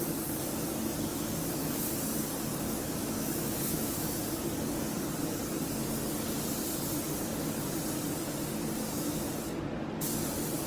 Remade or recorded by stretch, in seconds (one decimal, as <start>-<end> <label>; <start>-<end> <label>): 0.0-1.1 recorded; 1.1-1.9 remade; 1.9-2.5 recorded; 2.5-4.2 remade; 4.2-10.7 recorded